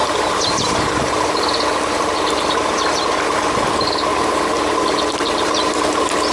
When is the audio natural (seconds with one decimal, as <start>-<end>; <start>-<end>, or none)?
1.3-4.1; 5.7-6.3